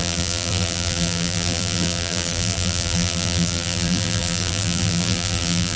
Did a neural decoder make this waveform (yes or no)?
yes